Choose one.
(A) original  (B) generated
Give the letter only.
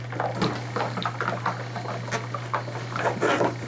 A